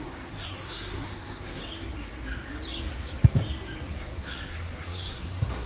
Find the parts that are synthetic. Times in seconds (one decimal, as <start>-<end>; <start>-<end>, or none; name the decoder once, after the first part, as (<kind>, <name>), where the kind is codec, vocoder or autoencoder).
0.0-1.6 (codec, SNAC); 3.9-5.7